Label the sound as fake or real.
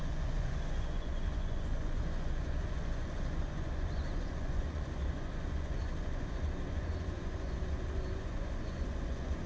fake